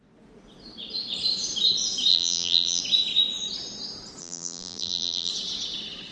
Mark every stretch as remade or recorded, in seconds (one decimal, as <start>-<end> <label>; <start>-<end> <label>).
0.0-2.1 recorded; 2.1-2.8 remade; 2.8-4.2 recorded; 4.2-5.3 remade; 5.3-6.1 recorded